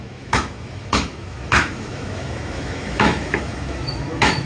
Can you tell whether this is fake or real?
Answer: fake